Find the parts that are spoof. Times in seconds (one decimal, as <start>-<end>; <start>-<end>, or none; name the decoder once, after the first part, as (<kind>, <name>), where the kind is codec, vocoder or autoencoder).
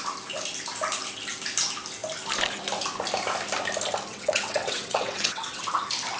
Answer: 4.1-5.6 (vocoder, WaveNeXt)